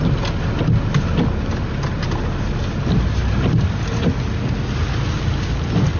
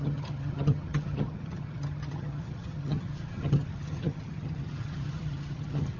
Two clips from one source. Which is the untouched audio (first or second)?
first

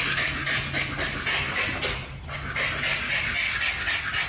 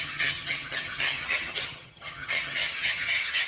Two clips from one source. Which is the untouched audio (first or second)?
first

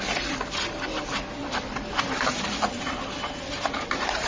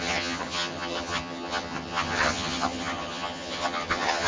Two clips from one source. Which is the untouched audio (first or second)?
first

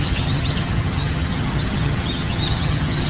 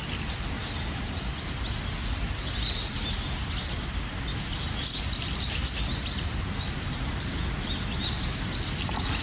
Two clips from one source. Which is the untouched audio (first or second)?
second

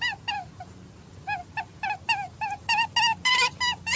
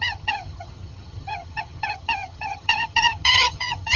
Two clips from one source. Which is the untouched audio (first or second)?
first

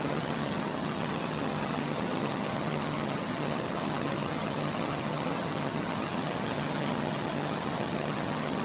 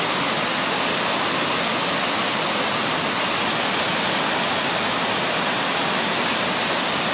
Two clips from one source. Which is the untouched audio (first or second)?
second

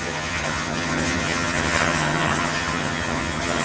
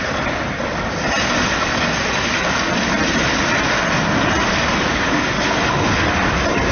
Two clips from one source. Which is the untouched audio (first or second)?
second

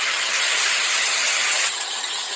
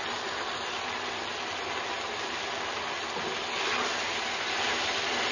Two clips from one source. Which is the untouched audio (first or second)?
second